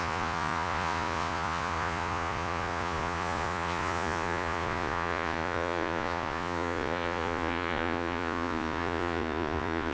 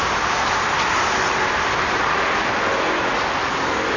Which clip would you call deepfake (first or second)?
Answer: first